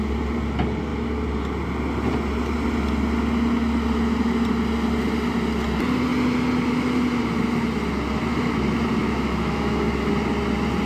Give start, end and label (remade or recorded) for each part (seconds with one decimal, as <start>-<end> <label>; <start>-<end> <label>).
0.0-9.0 recorded; 9.0-10.1 remade; 10.1-10.9 recorded